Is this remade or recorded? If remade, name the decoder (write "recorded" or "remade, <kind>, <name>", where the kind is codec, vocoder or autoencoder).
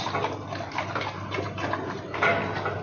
recorded